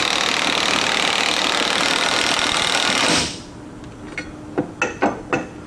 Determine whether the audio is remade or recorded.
recorded